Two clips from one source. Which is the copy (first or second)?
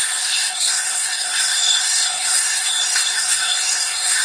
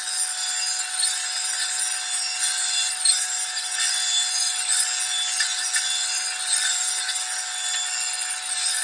first